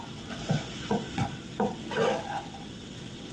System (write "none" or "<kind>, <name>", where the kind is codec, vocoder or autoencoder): vocoder, WaveNeXt